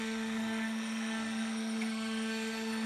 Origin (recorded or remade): remade